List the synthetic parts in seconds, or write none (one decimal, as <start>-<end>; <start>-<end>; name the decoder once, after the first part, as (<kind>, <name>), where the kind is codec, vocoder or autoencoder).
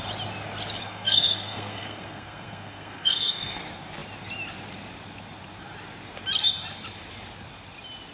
0.8-3.6 (codec, SNAC)